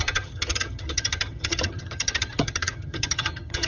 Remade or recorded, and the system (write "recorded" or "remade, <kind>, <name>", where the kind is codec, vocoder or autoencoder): remade, vocoder, HiFi-GAN